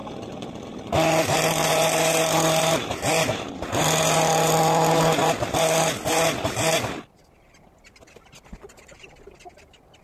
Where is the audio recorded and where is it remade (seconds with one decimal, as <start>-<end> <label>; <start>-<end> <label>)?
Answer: 0.0-10.0 recorded